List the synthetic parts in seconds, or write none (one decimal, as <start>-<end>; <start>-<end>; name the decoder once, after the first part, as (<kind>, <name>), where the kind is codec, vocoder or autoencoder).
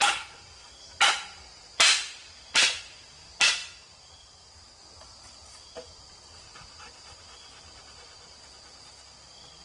none